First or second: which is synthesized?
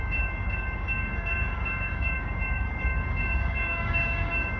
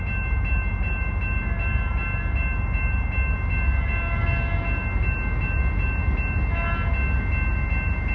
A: first